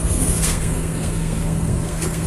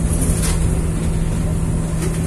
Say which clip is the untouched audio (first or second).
second